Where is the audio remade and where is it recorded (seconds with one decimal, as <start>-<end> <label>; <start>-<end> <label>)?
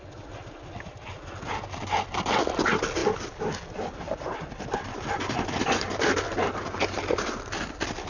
0.0-8.1 recorded